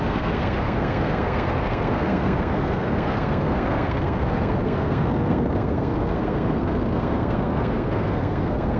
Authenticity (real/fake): fake